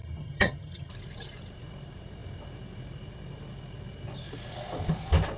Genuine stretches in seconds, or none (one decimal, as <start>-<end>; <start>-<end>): 0.9-5.4